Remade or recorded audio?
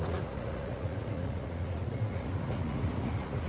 remade